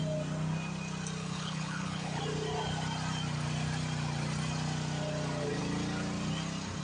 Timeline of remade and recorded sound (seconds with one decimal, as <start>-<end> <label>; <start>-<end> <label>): 0.0-1.2 recorded; 1.2-2.2 remade; 2.2-6.8 recorded